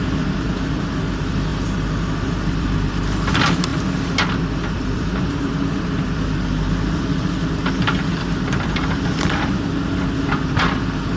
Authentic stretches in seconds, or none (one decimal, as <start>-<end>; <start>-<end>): 1.5-2.2; 3.7-4.3